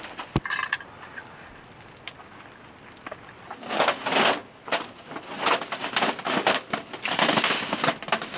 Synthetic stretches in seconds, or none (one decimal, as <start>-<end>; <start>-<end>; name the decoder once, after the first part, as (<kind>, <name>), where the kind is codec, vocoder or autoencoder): none